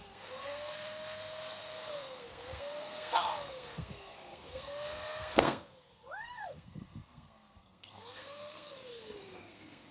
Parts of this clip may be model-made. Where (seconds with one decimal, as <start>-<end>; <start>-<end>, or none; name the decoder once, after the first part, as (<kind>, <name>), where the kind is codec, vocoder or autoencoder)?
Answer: 0.0-9.9 (codec, SNAC)